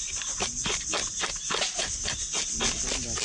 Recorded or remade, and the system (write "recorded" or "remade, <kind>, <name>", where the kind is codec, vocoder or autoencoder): recorded